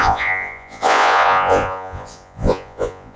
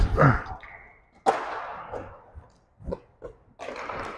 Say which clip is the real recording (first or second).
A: second